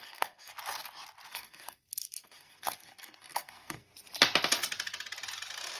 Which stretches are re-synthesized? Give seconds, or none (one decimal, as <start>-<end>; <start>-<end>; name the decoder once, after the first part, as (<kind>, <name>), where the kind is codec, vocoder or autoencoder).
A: 0.0-0.5 (codec, SNAC); 1.3-3.9